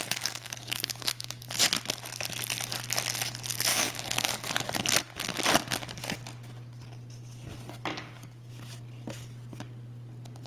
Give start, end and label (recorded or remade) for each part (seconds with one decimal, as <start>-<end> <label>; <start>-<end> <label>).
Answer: 0.0-1.5 remade; 1.5-3.7 recorded; 3.7-4.4 remade; 4.4-7.9 recorded; 7.9-8.5 remade; 8.5-10.5 recorded

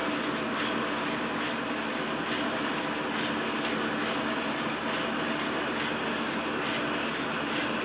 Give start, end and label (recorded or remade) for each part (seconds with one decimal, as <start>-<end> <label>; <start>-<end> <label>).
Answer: 0.0-7.8 recorded

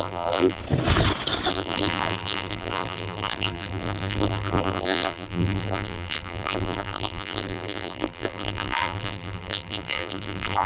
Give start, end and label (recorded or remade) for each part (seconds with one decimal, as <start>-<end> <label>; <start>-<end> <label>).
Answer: 0.0-0.6 remade; 0.6-1.5 recorded; 1.5-10.7 remade

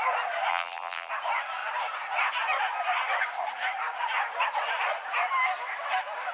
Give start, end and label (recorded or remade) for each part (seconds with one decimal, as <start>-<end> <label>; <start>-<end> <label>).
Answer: 0.0-0.5 recorded; 0.5-1.1 remade; 1.1-6.3 recorded

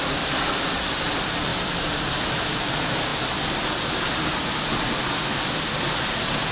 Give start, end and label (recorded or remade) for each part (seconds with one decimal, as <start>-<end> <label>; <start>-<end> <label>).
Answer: 0.0-1.5 recorded; 1.5-2.7 remade; 2.7-6.5 recorded

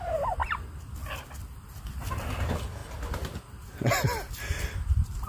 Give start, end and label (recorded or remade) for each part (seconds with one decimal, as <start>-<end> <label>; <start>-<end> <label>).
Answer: 0.0-5.3 recorded

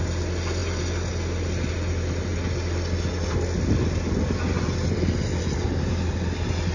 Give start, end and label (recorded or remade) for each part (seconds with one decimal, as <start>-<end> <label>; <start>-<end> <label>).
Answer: 0.0-6.7 recorded

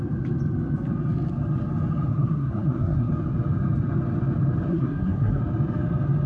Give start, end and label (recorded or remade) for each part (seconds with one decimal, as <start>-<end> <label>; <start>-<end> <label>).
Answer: 0.0-2.1 recorded; 2.1-3.1 remade; 3.1-4.7 recorded; 4.7-5.4 remade; 5.4-6.3 recorded